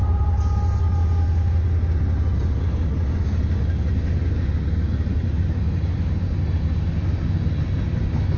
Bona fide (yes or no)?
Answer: yes